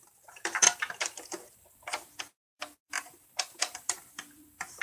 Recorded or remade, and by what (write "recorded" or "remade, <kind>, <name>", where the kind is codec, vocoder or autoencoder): remade, vocoder, BigVGAN v2